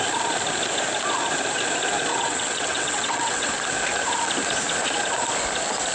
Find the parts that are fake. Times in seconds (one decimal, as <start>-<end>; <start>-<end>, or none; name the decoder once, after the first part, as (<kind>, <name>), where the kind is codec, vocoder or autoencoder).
2.1-3.5 (vocoder, WaveNeXt)